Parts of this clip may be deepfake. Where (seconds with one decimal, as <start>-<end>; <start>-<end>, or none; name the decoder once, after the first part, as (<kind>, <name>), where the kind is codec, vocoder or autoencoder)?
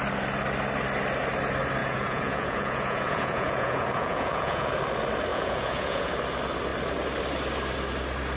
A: 1.8-4.8 (vocoder, Vocos); 5.3-6.1